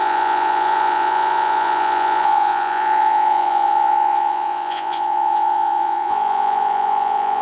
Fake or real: fake